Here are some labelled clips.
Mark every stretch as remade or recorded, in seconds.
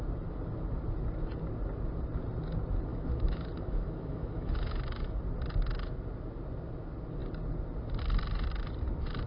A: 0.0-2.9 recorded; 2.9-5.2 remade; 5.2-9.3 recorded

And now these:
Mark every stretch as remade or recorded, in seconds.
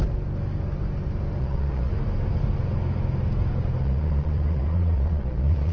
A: 0.0-1.4 recorded; 1.4-1.9 remade; 1.9-3.8 recorded; 3.8-5.7 remade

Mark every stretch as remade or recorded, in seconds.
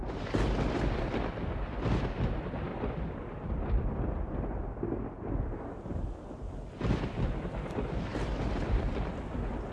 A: 0.0-9.7 recorded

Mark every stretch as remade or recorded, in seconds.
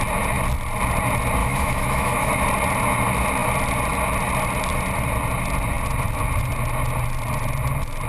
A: 0.0-1.4 recorded; 1.4-2.3 remade; 2.3-8.1 recorded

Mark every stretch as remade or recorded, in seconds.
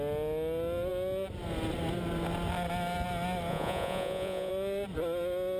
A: 0.0-3.5 recorded; 3.5-4.5 remade; 4.5-5.6 recorded